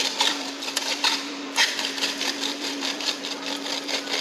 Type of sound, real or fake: fake